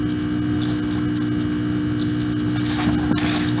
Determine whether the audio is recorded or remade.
recorded